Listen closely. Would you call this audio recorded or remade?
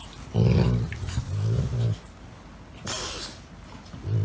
recorded